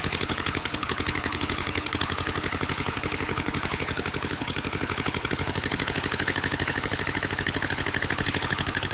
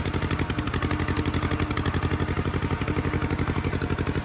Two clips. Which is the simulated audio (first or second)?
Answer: first